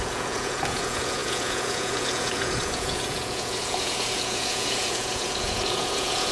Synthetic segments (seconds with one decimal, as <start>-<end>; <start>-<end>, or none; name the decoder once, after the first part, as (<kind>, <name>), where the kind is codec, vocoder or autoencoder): 0.0-6.3 (vocoder, Vocos)